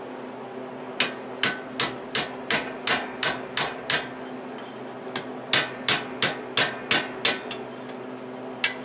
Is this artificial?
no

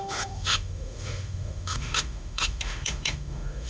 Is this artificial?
yes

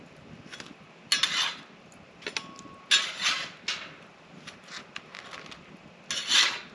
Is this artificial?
no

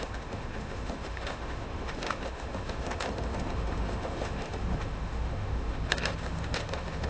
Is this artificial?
yes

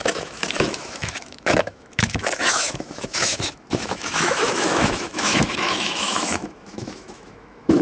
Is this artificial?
yes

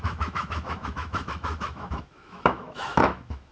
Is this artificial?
yes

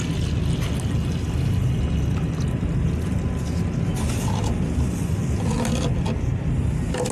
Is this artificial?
no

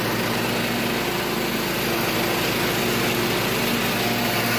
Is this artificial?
no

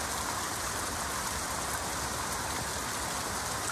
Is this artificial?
no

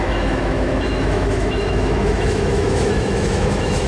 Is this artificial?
yes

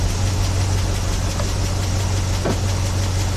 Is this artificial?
no